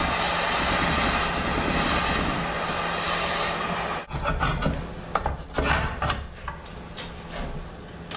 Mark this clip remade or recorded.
recorded